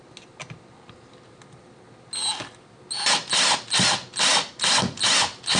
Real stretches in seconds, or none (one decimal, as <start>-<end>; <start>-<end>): 0.0-5.6